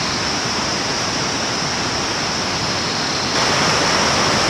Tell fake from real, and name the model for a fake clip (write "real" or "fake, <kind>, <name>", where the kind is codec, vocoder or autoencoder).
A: real